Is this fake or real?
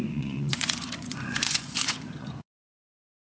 fake